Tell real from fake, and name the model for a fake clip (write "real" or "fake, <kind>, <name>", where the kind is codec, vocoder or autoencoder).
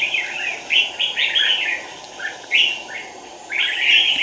real